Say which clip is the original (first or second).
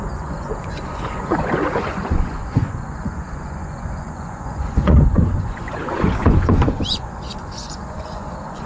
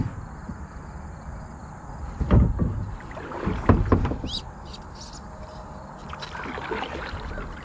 second